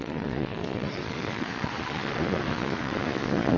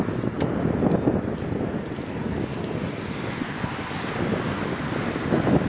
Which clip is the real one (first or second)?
second